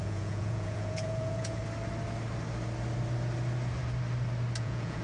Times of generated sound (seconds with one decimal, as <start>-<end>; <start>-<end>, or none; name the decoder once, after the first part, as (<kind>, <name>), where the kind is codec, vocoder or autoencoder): 0.0-1.6 (vocoder, Vocos); 4.6-5.0